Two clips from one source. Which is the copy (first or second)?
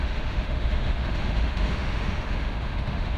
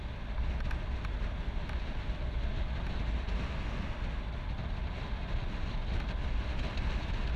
first